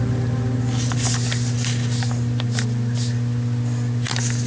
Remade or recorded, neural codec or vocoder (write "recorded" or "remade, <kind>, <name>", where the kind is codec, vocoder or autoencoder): recorded